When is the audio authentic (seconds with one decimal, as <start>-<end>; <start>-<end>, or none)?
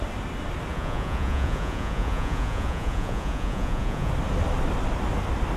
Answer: 0.0-0.7; 4.1-5.6